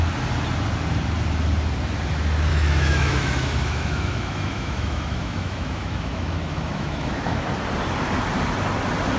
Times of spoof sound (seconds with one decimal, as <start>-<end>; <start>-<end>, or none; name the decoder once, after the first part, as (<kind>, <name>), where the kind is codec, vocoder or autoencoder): 2.5-7.5 (autoencoder, DAC-VAE)

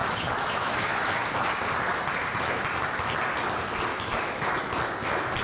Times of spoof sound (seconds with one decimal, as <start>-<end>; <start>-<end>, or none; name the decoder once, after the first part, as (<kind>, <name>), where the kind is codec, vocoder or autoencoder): 0.0-1.1 (autoencoder, DAC-VAE); 3.9-4.6

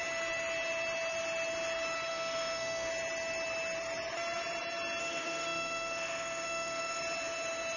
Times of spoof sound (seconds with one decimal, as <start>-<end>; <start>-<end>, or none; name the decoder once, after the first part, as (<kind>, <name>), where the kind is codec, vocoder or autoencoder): 2.1-2.9 (autoencoder, DAC-VAE); 5.0-7.0

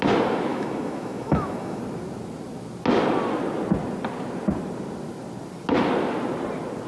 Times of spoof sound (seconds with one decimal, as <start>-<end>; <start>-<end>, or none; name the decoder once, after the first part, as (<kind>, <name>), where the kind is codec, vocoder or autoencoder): 0.5-1.8 (autoencoder, DAC-VAE)

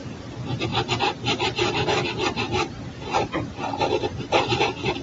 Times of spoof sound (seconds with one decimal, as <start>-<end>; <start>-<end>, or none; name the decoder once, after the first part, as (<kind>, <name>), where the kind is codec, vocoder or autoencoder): none